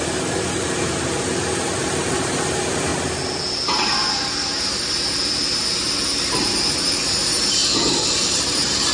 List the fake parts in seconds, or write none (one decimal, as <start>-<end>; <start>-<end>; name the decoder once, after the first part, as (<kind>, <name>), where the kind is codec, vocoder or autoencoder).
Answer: 0.0-2.9 (vocoder, BigVGAN v2); 3.4-8.9